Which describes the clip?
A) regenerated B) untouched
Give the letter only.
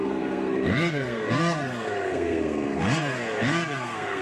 A